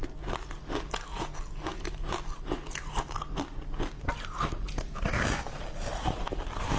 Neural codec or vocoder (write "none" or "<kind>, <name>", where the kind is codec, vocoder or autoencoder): none